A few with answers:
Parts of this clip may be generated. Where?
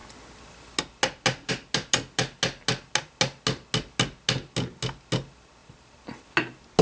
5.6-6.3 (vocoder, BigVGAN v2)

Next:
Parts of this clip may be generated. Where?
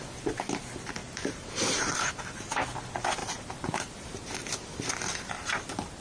1.0-2.1 (vocoder, BigVGAN v2); 3.2-3.9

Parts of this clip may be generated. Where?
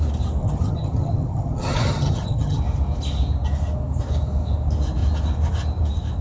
0.4-2.6 (vocoder, HiFi-GAN)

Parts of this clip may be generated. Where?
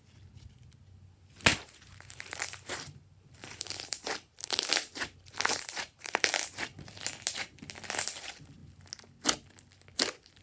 1.5-6.4 (vocoder, BigVGAN v2)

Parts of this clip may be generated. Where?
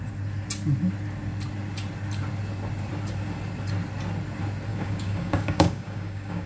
4.7-6.5 (codec, DAC)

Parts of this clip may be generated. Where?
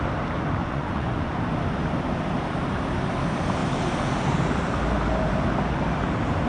0.6-1.3 (vocoder, Vocos)